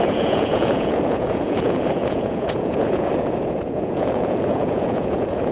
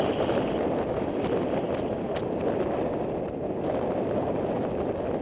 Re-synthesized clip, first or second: first